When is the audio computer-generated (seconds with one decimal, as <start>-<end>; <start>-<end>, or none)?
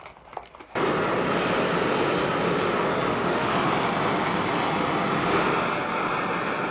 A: 3.1-3.7